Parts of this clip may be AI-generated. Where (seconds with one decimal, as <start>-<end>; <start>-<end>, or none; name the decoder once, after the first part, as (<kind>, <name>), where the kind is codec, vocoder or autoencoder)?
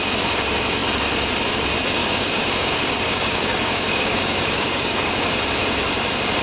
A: 2.0-5.1 (codec, DAC)